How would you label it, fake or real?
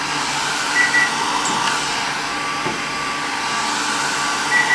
real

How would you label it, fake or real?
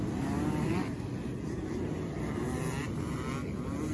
real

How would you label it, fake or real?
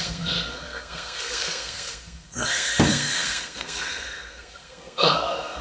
fake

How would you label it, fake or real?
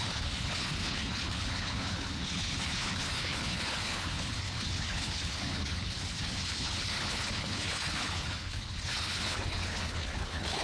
fake